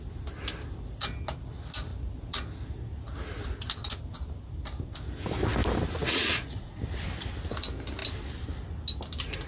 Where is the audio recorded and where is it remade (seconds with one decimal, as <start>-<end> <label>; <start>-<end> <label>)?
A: 0.0-5.9 recorded; 5.9-6.8 remade; 6.8-9.5 recorded